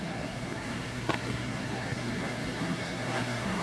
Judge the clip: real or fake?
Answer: fake